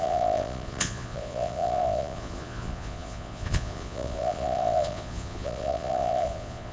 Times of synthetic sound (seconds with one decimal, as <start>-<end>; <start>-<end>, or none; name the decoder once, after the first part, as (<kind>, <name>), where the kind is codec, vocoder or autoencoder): 0.0-6.7 (vocoder, Vocos)